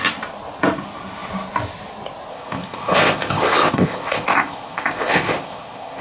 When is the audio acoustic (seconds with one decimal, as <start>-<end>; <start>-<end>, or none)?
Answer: 0.0-2.3